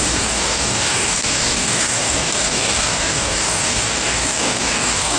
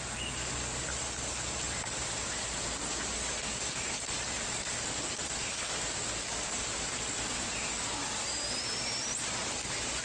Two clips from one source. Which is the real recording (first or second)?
second